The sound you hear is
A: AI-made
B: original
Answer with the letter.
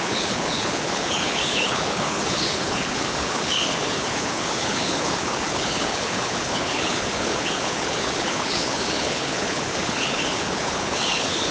A